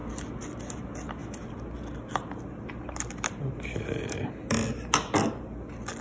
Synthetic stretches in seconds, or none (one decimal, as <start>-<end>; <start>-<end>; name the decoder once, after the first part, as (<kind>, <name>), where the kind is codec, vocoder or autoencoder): none